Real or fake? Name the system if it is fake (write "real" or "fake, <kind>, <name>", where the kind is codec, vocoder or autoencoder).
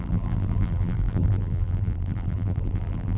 fake, vocoder, BigVGAN v2